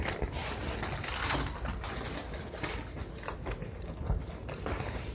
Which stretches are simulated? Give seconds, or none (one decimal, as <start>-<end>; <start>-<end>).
none